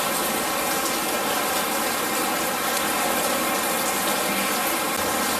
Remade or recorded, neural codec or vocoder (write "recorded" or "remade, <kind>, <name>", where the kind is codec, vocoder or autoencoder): recorded